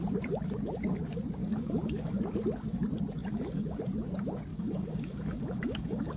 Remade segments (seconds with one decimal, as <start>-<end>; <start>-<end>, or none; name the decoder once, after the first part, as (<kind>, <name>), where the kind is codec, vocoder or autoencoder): 1.4-2.2 (codec, DAC); 3.2-3.8; 4.5-6.2